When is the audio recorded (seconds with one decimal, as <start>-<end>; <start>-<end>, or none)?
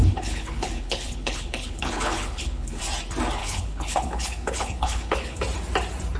2.8-3.4; 5.4-6.2